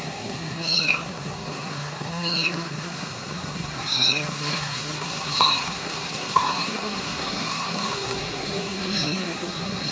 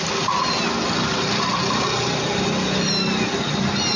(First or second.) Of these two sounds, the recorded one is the second